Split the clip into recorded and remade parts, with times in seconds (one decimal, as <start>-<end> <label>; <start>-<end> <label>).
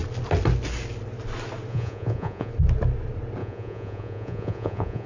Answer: 0.0-1.7 recorded; 1.7-2.5 remade; 2.5-3.4 recorded; 3.4-5.1 remade